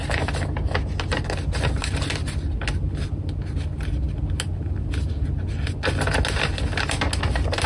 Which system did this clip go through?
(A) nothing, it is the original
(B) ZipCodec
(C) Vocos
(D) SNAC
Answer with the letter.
A